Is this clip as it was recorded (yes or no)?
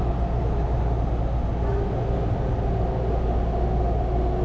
yes